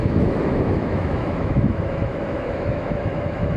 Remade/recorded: remade